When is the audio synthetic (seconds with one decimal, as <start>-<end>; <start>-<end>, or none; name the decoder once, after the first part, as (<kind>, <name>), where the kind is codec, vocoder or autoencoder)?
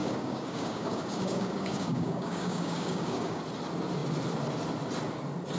0.0-3.4 (codec, DAC)